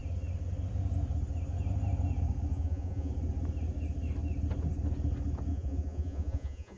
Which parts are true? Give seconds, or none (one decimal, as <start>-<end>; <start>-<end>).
0.0-2.5; 3.1-5.5